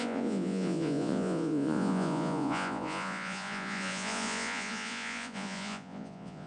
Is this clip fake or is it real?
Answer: fake